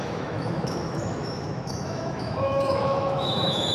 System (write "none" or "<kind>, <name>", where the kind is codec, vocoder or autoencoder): autoencoder, DAC-VAE